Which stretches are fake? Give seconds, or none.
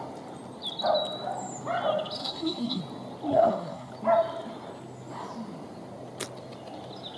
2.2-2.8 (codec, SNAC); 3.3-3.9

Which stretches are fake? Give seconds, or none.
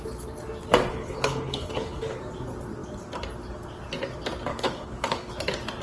0.9-2.2 (codec, HILCodec); 4.5-5.3